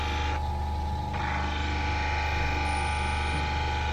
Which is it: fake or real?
real